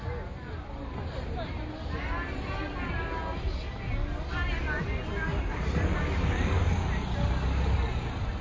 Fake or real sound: real